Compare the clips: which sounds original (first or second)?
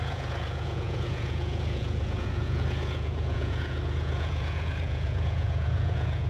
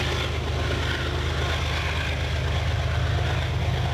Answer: second